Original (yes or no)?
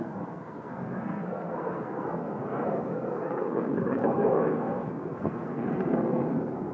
no